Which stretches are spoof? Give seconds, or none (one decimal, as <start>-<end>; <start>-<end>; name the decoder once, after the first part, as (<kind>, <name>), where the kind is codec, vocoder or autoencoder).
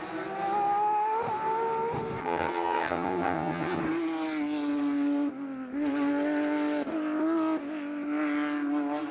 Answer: 2.2-3.8 (vocoder, HiFi-GAN)